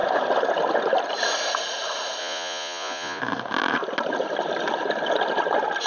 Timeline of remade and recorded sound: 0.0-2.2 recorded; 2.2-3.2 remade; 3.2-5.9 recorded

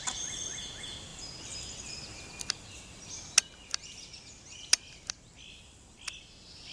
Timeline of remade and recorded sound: 0.0-6.7 recorded

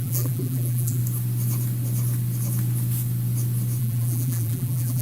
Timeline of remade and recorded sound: 0.0-1.0 remade; 1.0-3.8 recorded; 3.8-5.0 remade

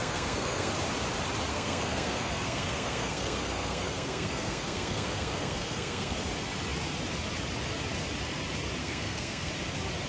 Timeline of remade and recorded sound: 0.0-0.7 remade; 0.7-1.5 recorded; 1.5-6.3 remade; 6.3-8.8 recorded; 8.8-9.5 remade; 9.5-10.1 recorded

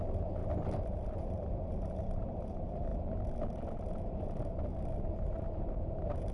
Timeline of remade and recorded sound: 0.0-2.9 remade; 2.9-5.5 recorded; 5.5-6.3 remade

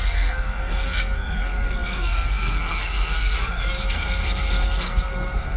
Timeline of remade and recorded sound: 0.0-5.6 remade

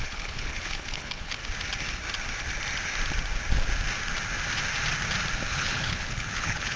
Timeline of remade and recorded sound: 0.0-1.4 remade; 1.4-5.5 recorded; 5.5-6.8 remade